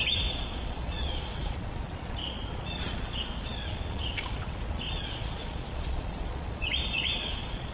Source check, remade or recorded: remade